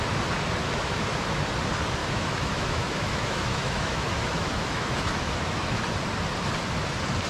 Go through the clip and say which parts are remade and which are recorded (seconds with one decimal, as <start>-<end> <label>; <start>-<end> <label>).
0.0-0.6 recorded; 0.6-1.4 remade; 1.4-2.0 recorded; 2.0-5.8 remade; 5.8-7.3 recorded